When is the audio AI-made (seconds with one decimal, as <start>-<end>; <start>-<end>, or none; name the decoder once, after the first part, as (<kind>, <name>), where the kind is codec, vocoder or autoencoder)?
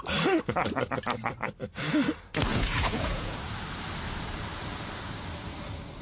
2.5-3.4 (vocoder, Vocos)